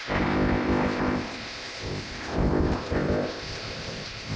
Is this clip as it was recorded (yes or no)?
no